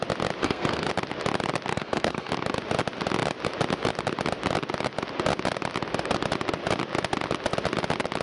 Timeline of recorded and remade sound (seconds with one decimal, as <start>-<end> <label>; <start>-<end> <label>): 0.0-0.4 recorded; 0.4-0.9 remade; 0.9-1.7 recorded; 1.7-2.3 remade; 2.3-8.2 recorded